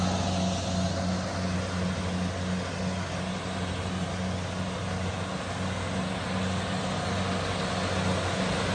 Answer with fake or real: real